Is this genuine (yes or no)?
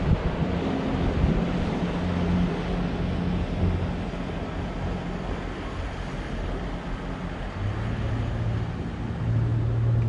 yes